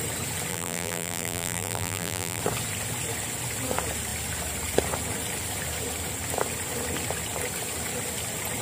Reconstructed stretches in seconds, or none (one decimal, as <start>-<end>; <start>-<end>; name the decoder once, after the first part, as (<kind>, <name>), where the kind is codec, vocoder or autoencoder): 0.5-2.4 (vocoder, BigVGAN v2)